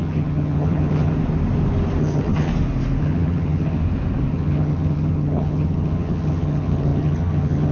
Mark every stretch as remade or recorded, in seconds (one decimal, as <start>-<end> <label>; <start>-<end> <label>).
0.0-1.1 remade; 1.1-2.0 recorded; 2.0-2.5 remade; 2.5-3.0 recorded; 3.0-3.8 remade; 3.8-4.3 recorded; 4.3-7.7 remade